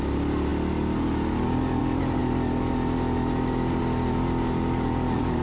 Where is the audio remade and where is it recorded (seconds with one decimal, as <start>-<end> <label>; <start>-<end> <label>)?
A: 0.0-5.4 recorded